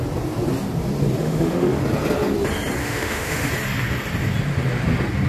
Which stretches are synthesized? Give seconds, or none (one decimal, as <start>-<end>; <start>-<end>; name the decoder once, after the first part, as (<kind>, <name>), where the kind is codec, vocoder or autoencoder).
1.2-1.8 (autoencoder, DAC-VAE); 2.8-3.5